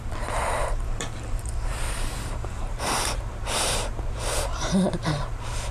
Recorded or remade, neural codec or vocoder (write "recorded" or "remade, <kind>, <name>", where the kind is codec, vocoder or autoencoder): remade, vocoder, BigVGAN v2